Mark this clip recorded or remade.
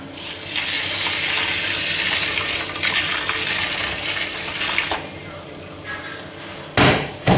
recorded